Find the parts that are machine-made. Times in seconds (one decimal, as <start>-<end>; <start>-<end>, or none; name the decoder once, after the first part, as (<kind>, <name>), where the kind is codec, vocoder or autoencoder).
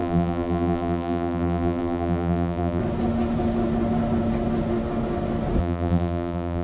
0.0-2.8 (vocoder, BigVGAN v2); 5.6-6.6